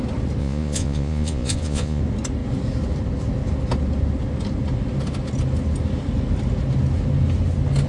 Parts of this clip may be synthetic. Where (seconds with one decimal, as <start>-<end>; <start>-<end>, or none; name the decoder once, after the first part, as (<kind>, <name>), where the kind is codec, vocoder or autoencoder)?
0.4-2.0 (vocoder, Vocos)